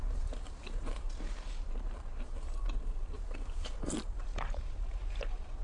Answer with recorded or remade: remade